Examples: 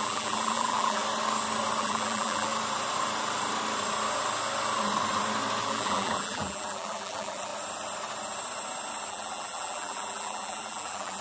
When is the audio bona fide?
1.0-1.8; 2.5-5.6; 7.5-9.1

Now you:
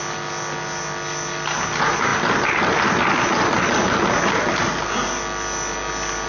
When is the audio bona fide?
0.0-6.3

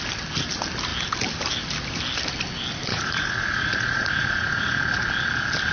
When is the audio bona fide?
0.0-2.9; 4.8-5.7